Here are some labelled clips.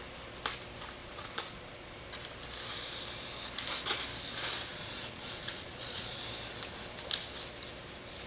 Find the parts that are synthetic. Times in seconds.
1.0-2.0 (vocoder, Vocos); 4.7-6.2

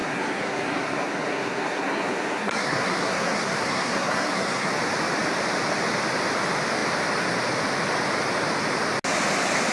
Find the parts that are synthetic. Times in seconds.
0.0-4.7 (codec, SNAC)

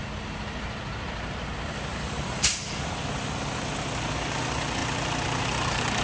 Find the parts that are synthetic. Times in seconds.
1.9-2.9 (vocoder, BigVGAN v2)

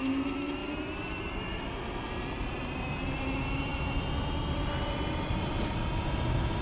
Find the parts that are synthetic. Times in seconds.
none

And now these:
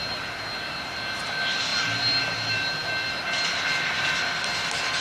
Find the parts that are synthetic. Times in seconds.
none